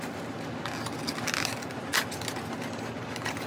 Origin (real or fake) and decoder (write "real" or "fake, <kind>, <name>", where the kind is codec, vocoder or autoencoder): real